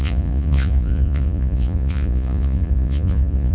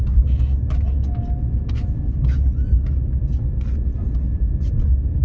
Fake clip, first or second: first